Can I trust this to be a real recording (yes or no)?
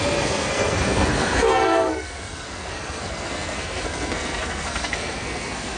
no